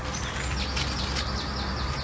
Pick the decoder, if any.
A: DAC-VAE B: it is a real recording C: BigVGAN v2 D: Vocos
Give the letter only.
B